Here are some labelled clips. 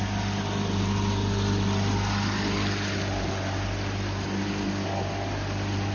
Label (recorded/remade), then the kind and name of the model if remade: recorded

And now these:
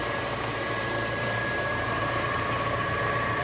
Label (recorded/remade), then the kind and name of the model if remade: remade, vocoder, BigVGAN v2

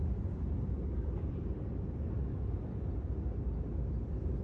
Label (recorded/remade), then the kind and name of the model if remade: recorded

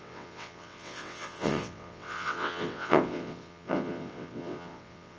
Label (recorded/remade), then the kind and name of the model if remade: remade, vocoder, WaveNeXt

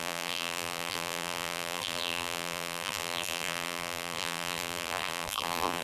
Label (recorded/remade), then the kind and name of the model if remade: remade, vocoder, BigVGAN v2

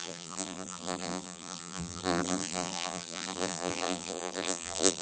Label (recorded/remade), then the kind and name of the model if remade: remade, vocoder, BigVGAN v2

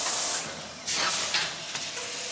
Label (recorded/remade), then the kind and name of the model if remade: recorded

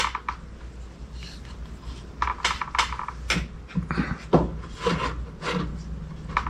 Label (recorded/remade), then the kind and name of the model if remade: recorded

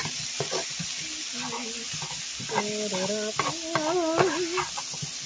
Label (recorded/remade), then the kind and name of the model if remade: recorded